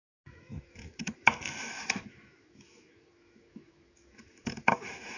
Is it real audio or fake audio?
fake